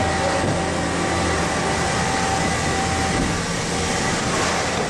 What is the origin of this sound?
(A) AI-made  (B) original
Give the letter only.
B